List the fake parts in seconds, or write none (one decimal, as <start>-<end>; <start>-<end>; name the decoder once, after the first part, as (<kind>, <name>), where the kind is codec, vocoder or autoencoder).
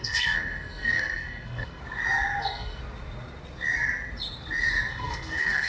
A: 0.0-1.8 (codec, SNAC); 2.4-2.8; 4.9-5.7